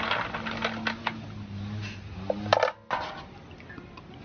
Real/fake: real